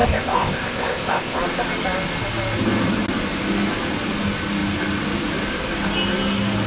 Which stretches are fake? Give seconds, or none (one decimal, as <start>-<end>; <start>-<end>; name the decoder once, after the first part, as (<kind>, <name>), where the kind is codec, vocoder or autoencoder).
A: 0.0-1.4 (codec, ZipCodec)